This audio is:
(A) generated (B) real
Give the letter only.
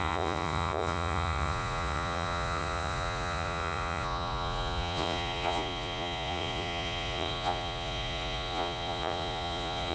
A